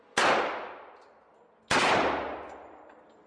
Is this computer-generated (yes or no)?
no